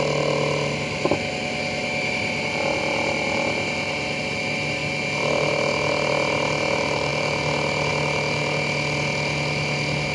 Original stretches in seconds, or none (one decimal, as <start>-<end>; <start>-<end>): 0.0-10.1